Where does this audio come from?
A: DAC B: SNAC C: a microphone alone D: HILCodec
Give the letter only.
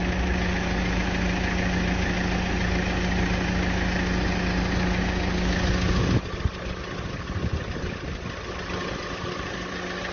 C